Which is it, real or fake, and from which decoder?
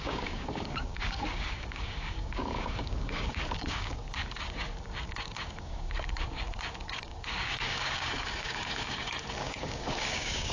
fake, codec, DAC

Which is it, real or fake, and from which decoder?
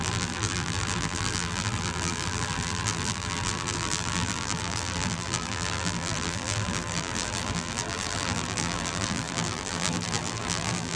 fake, vocoder, BigVGAN v2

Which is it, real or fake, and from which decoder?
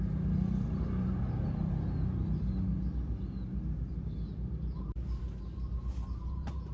real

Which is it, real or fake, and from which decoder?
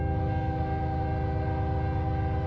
real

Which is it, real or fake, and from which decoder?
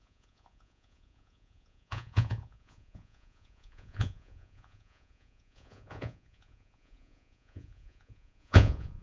fake, vocoder, Vocos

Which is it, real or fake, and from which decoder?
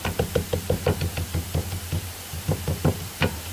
fake, vocoder, BigVGAN v2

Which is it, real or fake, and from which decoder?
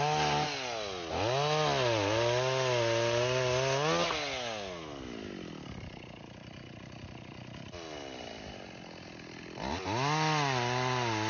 real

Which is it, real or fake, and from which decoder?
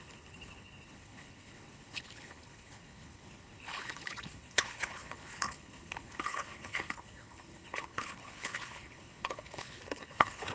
fake, codec, HILCodec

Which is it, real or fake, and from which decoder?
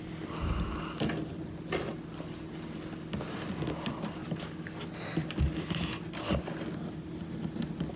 real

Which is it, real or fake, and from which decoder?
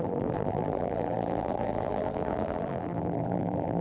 fake, vocoder, BigVGAN v2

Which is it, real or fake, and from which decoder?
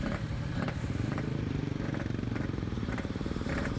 fake, vocoder, BigVGAN v2